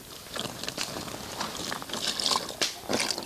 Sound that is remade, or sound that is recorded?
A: recorded